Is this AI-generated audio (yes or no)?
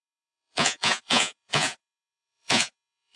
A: yes